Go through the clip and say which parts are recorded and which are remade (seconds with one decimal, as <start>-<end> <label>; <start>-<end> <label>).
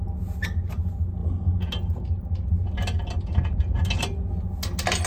0.0-5.1 recorded